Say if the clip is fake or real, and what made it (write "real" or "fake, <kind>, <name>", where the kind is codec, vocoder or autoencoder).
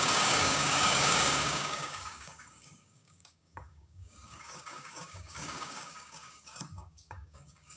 fake, codec, DAC